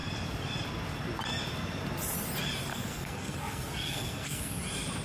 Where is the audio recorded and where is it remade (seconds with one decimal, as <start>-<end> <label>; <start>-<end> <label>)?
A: 0.0-2.7 recorded; 2.7-4.6 remade; 4.6-5.0 recorded